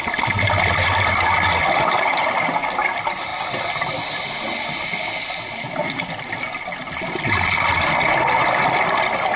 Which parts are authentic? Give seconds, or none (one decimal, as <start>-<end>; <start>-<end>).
0.0-9.4